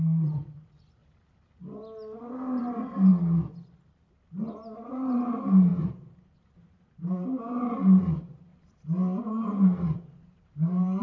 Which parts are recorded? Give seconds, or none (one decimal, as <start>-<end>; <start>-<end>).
1.0-2.6; 3.1-4.9; 8.5-9.2